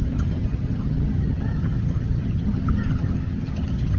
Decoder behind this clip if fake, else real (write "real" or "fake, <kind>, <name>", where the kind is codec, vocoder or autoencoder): fake, vocoder, HiFi-GAN